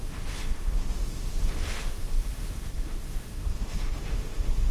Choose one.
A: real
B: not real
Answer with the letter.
B